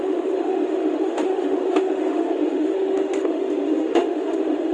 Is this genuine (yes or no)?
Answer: no